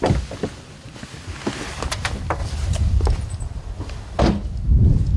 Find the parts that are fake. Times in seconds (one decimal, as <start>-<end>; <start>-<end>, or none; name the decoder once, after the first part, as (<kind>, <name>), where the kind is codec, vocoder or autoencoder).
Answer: none

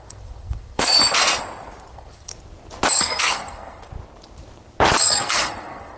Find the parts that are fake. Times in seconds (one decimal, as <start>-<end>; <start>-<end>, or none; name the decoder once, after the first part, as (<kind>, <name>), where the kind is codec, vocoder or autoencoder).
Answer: 0.0-1.0 (codec, SNAC); 1.9-2.3; 2.9-3.9; 5.0-6.0

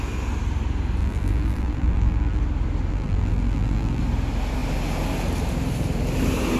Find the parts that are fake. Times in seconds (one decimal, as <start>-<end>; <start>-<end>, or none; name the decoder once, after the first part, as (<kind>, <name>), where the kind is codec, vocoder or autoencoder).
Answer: 1.0-2.4 (vocoder, BigVGAN v2); 2.9-4.0